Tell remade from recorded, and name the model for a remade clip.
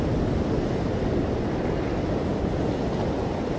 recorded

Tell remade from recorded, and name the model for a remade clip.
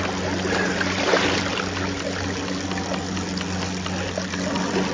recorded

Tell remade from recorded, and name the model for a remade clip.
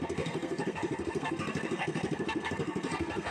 remade, codec, SNAC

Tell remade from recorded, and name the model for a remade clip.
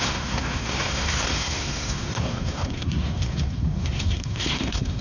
remade, codec, SNAC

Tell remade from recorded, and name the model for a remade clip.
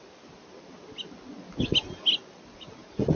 recorded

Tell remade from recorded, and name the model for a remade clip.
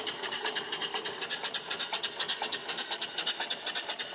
recorded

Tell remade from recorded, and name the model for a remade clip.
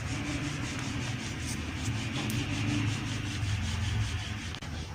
recorded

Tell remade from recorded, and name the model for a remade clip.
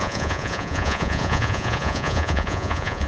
remade, vocoder, Vocos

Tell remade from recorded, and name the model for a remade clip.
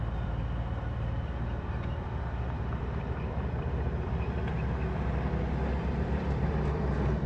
remade, vocoder, BigVGAN v2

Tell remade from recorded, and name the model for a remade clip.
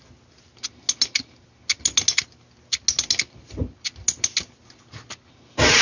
recorded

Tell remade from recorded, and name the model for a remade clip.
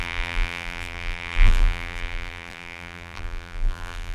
remade, vocoder, BigVGAN v2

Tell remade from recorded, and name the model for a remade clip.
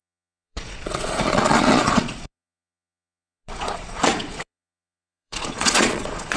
remade, vocoder, Vocos